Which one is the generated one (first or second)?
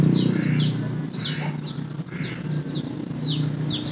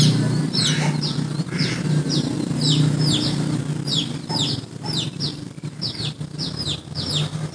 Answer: second